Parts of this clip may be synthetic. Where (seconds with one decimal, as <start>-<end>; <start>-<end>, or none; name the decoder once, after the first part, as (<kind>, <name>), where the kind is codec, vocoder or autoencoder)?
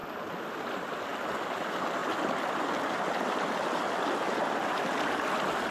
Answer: none